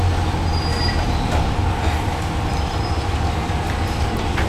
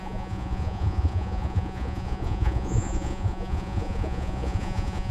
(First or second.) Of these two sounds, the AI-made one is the second